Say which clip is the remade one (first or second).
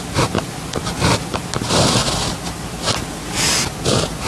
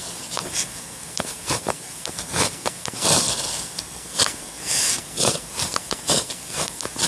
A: second